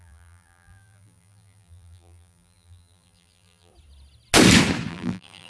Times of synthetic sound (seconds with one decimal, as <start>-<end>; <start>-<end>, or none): 0.0-3.7; 4.9-5.5